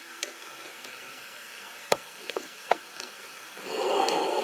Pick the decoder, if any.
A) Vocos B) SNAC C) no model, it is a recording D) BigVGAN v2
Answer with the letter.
B